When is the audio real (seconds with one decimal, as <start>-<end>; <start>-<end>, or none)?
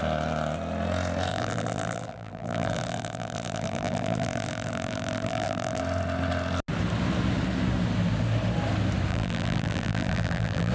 0.0-1.3; 5.8-9.1